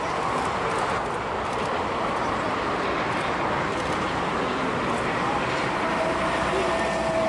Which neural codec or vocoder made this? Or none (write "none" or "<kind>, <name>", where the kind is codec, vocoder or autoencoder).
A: none